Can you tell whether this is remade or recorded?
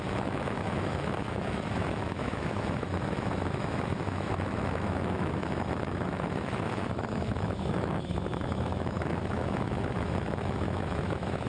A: remade